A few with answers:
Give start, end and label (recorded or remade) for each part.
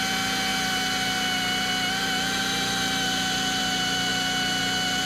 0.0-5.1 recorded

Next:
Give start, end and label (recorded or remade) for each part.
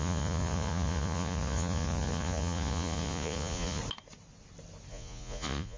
0.0-3.8 remade; 3.8-4.9 recorded; 4.9-5.8 remade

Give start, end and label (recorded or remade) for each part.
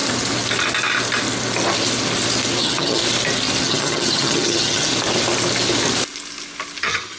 0.0-2.6 recorded; 2.6-3.0 remade; 3.0-3.6 recorded; 3.6-4.9 remade; 4.9-6.8 recorded; 6.8-7.2 remade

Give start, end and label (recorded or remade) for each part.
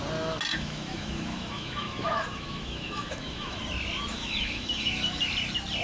0.0-0.5 recorded; 0.5-3.6 remade; 3.6-4.1 recorded; 4.1-5.3 remade; 5.3-5.8 recorded